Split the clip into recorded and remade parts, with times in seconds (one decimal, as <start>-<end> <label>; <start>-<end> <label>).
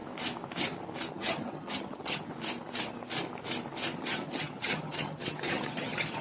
0.0-1.1 recorded; 1.1-2.3 remade; 2.3-4.0 recorded; 4.0-6.2 remade